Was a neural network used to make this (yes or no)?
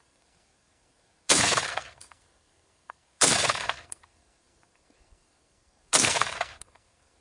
yes